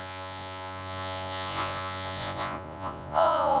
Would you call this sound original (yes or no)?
no